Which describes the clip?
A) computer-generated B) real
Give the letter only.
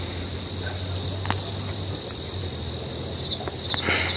B